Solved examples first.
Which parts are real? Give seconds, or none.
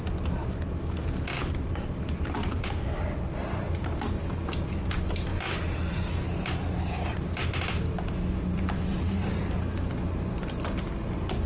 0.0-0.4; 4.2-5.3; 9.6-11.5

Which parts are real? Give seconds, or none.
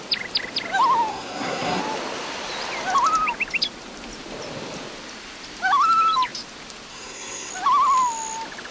0.0-1.1; 1.8-6.9; 7.5-8.7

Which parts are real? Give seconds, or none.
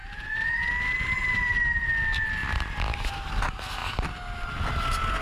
0.7-1.2; 1.9-5.2